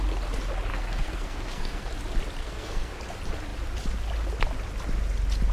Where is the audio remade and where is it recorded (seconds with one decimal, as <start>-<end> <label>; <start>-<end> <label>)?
0.0-0.7 recorded; 0.7-1.9 remade; 1.9-2.4 recorded; 2.4-3.0 remade; 3.0-5.5 recorded